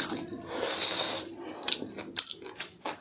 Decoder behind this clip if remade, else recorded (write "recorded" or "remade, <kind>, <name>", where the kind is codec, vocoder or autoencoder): recorded